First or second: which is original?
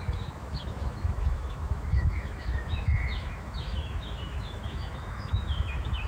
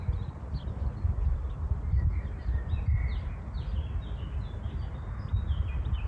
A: second